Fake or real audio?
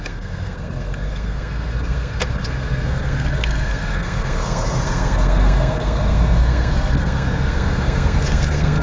fake